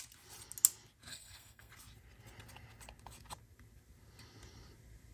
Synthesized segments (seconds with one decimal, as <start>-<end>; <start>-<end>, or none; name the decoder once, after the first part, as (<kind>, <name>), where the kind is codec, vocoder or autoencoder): 1.1-1.7 (codec, SNAC)